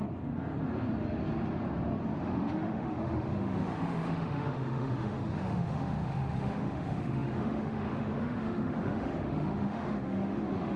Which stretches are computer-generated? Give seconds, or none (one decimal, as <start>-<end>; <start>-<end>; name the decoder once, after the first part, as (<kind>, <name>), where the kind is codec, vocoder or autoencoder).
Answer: 2.2-10.8 (autoencoder, DAC-VAE)